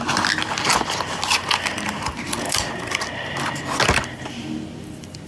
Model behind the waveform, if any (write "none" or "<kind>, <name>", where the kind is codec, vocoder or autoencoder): none